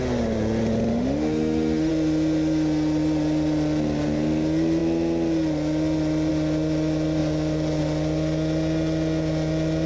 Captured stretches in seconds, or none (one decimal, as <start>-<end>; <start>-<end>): 0.0-0.9; 1.9-9.9